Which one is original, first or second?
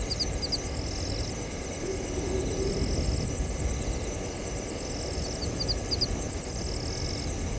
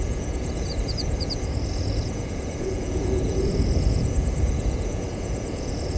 first